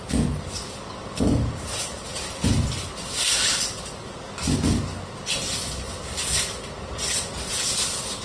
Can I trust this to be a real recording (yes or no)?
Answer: yes